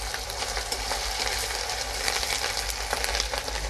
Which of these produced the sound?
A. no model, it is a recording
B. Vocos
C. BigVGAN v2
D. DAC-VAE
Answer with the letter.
A